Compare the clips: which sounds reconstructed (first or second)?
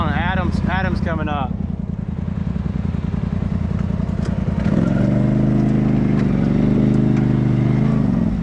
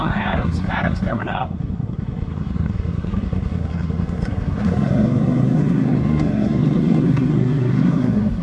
second